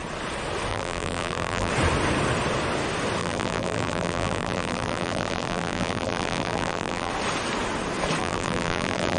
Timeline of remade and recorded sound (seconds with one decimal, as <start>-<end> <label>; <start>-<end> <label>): 0.0-0.7 recorded; 0.7-1.7 remade; 1.7-3.2 recorded; 3.2-7.1 remade; 7.1-8.2 recorded; 8.2-9.2 remade